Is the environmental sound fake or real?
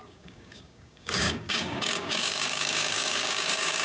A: fake